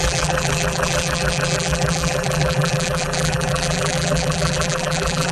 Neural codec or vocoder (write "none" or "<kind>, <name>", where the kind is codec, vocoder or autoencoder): vocoder, BigVGAN v2